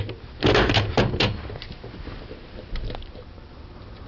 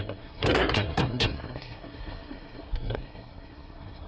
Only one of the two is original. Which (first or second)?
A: first